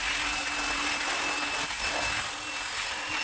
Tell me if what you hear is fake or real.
real